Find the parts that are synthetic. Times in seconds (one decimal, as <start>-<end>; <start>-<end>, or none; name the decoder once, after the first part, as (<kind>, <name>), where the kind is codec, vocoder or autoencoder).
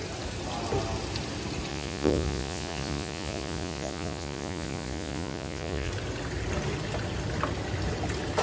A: 1.7-5.9 (vocoder, Vocos)